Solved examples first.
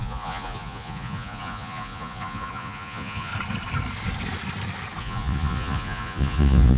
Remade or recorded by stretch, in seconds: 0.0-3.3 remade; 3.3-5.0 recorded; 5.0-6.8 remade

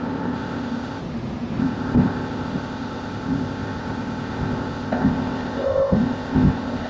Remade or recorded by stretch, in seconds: 0.0-1.0 remade; 1.0-1.6 recorded; 1.6-6.9 remade

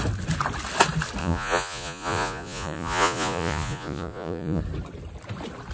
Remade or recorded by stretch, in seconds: 0.0-1.2 recorded; 1.2-4.6 remade; 4.6-5.7 recorded